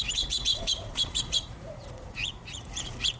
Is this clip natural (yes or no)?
no